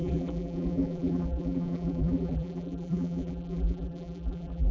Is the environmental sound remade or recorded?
remade